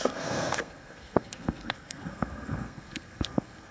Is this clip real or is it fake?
fake